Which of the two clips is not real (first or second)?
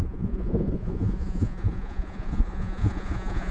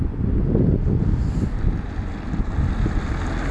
first